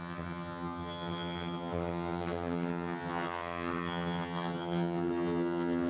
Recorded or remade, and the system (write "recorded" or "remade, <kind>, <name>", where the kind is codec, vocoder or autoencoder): remade, vocoder, HiFi-GAN